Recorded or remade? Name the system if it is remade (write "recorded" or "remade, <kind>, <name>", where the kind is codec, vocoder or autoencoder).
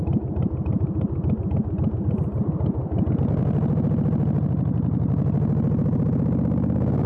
recorded